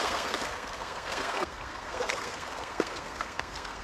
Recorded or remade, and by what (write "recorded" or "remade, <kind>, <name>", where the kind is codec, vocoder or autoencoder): remade, codec, SNAC